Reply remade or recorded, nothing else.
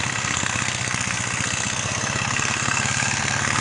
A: remade